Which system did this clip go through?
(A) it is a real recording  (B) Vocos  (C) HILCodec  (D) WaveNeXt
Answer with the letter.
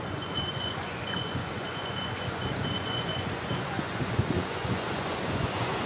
B